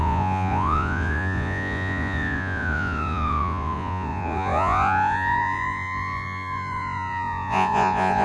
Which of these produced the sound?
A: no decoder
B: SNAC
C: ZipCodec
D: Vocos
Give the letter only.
D